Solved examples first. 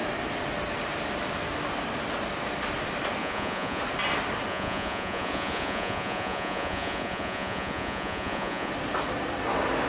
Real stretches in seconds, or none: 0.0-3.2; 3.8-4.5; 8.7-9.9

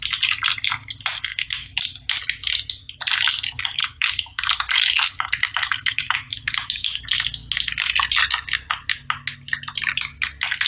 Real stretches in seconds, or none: 0.0-1.3; 2.1-3.8; 7.0-10.7